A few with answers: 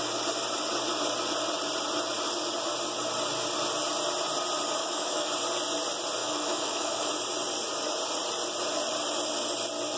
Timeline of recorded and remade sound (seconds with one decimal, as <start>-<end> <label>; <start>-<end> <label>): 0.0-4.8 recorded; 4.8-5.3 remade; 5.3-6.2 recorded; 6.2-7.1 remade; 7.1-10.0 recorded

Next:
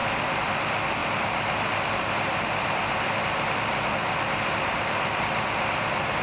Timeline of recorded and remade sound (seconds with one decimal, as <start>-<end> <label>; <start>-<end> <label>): 0.0-6.2 recorded

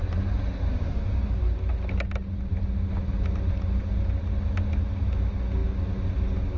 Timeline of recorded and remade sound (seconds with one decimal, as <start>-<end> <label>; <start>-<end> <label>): 0.0-0.7 recorded; 0.7-1.4 remade; 1.4-6.6 recorded

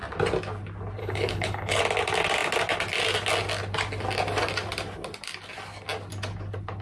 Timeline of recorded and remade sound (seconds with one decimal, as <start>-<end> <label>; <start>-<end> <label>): 0.0-1.0 recorded; 1.0-1.8 remade; 1.8-6.8 recorded